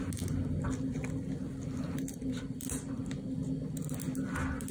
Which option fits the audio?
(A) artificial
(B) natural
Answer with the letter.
B